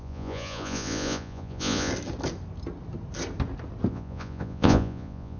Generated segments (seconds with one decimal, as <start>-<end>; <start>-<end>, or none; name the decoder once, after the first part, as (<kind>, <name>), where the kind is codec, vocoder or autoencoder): 0.0-1.9 (vocoder, Vocos); 3.9-5.4